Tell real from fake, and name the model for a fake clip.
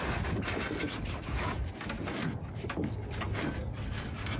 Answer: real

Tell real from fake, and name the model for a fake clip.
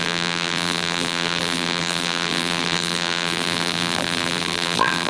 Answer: fake, vocoder, BigVGAN v2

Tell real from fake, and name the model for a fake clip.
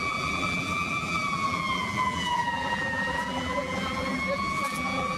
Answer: fake, vocoder, BigVGAN v2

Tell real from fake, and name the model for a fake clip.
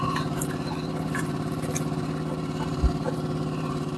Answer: fake, vocoder, BigVGAN v2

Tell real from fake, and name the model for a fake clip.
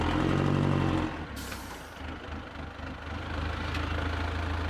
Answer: real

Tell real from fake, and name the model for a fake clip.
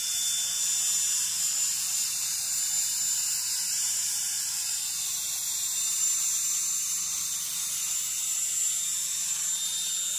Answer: real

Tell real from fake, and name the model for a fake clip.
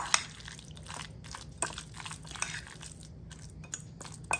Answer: real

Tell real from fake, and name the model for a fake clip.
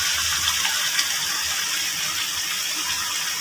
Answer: real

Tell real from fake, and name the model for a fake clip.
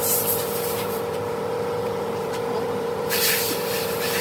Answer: fake, vocoder, BigVGAN v2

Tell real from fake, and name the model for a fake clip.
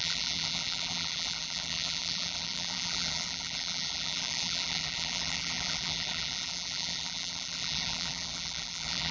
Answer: fake, vocoder, BigVGAN v2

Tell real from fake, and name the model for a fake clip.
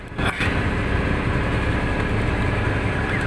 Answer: real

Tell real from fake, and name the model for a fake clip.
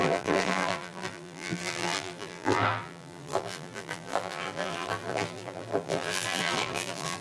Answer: fake, vocoder, BigVGAN v2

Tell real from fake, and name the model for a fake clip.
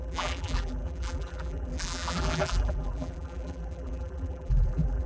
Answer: fake, vocoder, BigVGAN v2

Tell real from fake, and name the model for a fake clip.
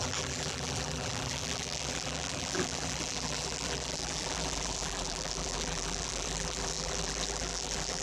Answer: fake, vocoder, BigVGAN v2